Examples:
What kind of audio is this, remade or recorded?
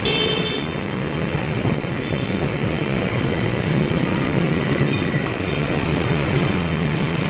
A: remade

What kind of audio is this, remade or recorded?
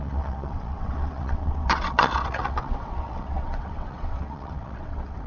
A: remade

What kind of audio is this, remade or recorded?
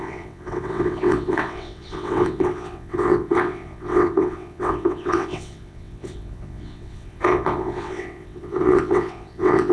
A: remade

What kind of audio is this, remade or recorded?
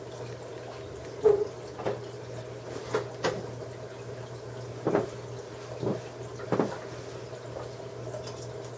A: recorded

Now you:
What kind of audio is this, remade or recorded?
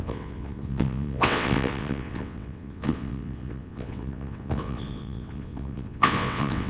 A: remade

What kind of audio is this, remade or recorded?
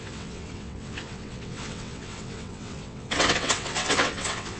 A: remade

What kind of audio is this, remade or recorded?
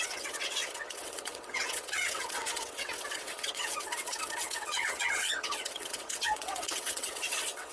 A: remade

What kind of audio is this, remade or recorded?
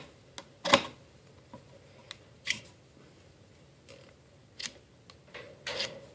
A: recorded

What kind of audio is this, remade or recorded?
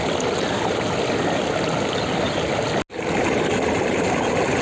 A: recorded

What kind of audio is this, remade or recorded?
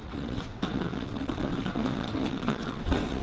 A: remade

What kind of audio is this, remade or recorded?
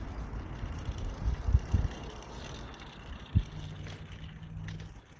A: recorded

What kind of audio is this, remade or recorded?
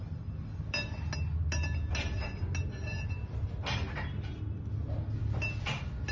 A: recorded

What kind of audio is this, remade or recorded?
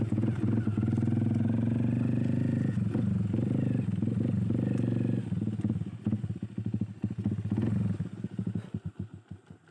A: recorded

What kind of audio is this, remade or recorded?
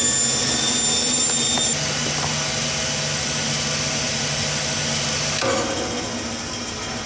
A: recorded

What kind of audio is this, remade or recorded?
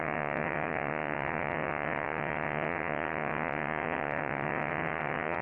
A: remade